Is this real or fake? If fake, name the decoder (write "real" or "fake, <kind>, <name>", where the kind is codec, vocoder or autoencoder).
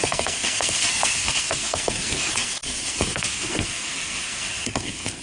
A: fake, codec, SNAC